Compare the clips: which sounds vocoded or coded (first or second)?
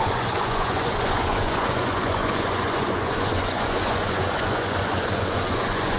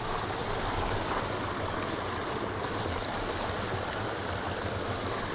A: first